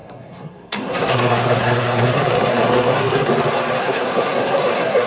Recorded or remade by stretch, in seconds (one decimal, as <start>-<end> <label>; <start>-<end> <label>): 0.0-3.3 remade; 3.3-3.8 recorded; 3.8-5.1 remade